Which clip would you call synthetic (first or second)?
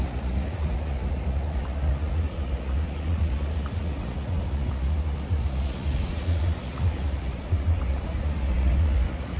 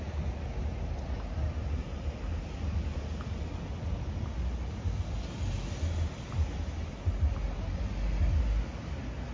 first